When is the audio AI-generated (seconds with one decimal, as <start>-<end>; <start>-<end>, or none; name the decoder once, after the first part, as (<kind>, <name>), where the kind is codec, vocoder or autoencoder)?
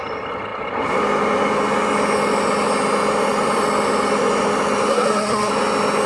4.9-5.5 (codec, SNAC)